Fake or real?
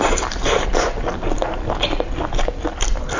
real